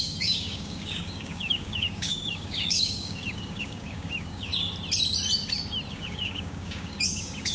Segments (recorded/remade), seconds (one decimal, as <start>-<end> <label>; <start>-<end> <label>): 0.0-4.5 remade; 4.5-5.9 recorded; 5.9-7.5 remade